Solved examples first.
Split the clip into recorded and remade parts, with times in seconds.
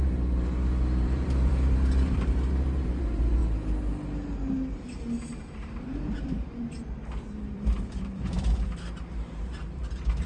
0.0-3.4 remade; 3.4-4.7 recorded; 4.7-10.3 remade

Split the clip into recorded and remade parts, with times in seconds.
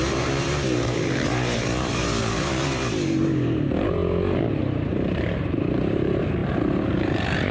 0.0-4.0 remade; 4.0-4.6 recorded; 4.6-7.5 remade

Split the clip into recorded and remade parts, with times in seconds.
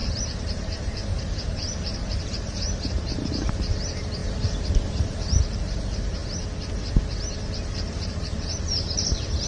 0.0-4.2 remade; 4.2-5.4 recorded; 5.4-6.2 remade; 6.2-7.8 recorded; 7.8-9.5 remade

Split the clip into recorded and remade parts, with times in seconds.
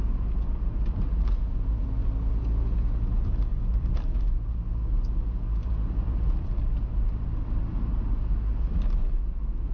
0.0-3.5 recorded; 3.5-4.5 remade; 4.5-5.6 recorded; 5.6-7.4 remade; 7.4-9.7 recorded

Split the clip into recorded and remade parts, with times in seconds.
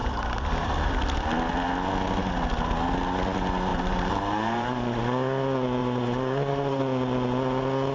0.0-0.9 remade; 0.9-3.7 recorded; 3.7-5.0 remade; 5.0-5.8 recorded; 5.8-6.8 remade; 6.8-7.9 recorded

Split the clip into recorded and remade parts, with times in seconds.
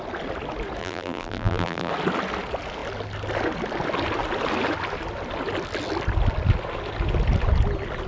0.0-0.8 recorded; 0.8-1.9 remade; 1.9-8.1 recorded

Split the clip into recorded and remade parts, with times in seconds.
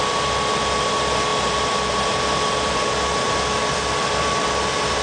0.0-1.3 recorded; 1.3-4.3 remade; 4.3-5.0 recorded